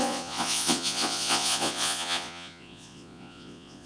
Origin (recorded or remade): remade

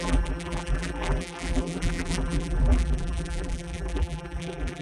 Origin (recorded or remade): remade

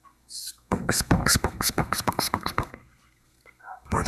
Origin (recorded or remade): remade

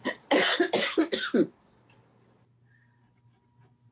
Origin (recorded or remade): recorded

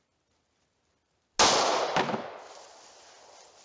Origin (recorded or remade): recorded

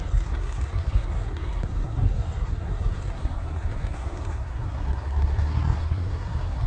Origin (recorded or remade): remade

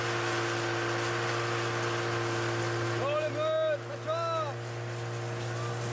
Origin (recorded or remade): recorded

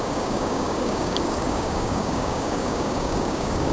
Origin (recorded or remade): remade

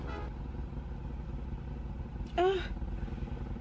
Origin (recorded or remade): recorded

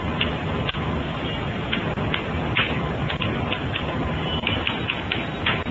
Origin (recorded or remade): recorded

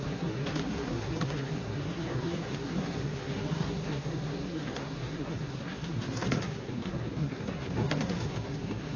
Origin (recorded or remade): remade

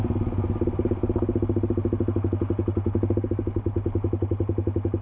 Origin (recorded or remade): recorded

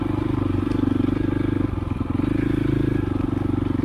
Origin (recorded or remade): recorded